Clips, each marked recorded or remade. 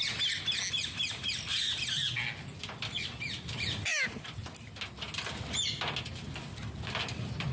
recorded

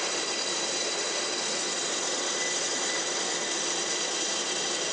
recorded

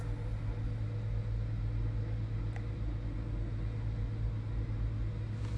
recorded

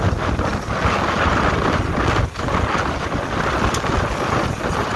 recorded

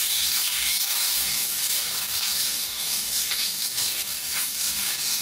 remade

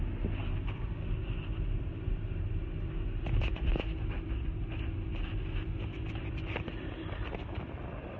recorded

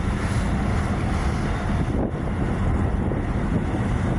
recorded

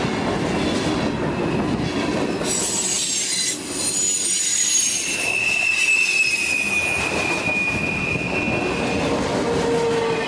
recorded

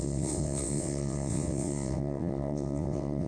remade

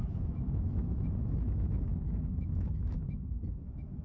remade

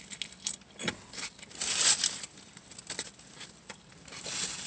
recorded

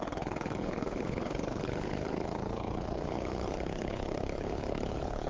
remade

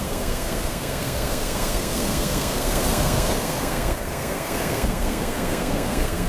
remade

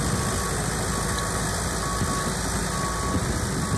recorded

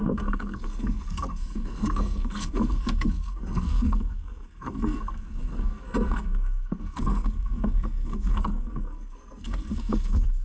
remade